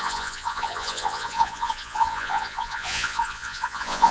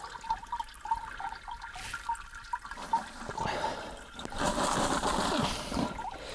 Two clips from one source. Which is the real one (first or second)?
second